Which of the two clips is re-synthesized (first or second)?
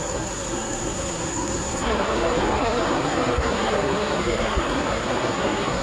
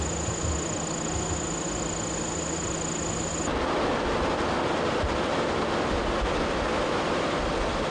first